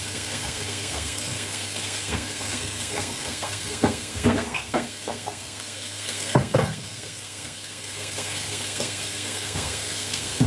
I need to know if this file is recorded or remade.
remade